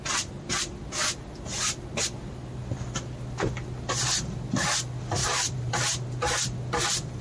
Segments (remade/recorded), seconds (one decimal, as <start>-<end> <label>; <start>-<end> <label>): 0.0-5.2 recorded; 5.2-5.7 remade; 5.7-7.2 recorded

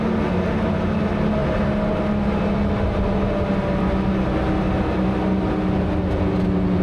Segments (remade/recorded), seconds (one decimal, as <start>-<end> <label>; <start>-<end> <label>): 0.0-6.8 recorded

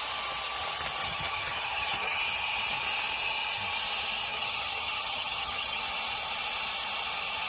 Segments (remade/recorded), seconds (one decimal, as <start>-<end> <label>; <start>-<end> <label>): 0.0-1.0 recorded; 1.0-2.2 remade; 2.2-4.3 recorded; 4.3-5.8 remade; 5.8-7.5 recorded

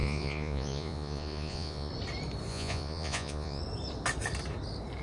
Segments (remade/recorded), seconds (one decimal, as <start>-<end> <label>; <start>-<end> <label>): 0.0-1.9 remade; 1.9-2.5 recorded; 2.5-3.6 remade; 3.6-5.0 recorded

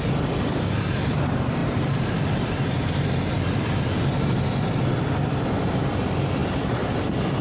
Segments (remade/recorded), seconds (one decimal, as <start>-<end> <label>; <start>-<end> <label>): 0.0-7.4 remade